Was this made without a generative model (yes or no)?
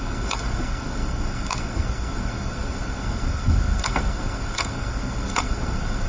no